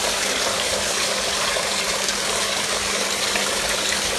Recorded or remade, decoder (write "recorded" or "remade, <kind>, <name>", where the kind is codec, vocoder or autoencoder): remade, codec, DAC